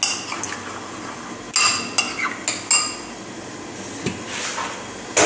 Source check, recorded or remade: recorded